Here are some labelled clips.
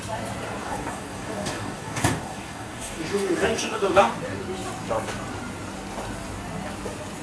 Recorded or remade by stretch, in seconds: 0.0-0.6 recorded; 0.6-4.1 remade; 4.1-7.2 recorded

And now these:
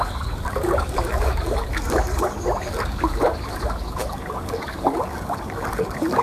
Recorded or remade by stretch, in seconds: 0.0-6.2 remade

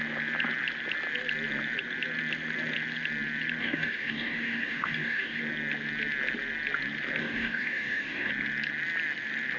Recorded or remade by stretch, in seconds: 0.0-3.6 recorded; 3.6-5.4 remade; 5.4-7.2 recorded; 7.2-8.3 remade; 8.3-9.6 recorded

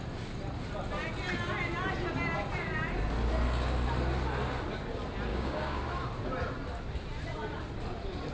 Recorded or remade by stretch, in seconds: 0.0-5.3 recorded; 5.3-5.8 remade; 5.8-8.3 recorded

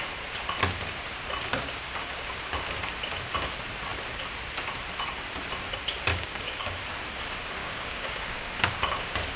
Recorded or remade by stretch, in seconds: 0.0-1.5 recorded; 1.5-2.4 remade; 2.4-6.1 recorded; 6.1-6.8 remade; 6.8-7.6 recorded; 7.6-9.0 remade; 9.0-9.4 recorded

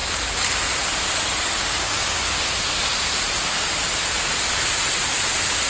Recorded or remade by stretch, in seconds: 0.0-1.6 recorded; 1.6-2.2 remade; 2.2-5.7 recorded

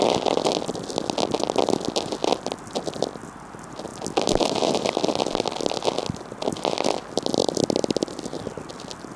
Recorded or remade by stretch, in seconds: 0.0-9.2 recorded

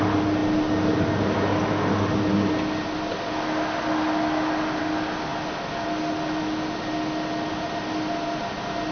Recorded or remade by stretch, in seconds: 0.0-8.9 recorded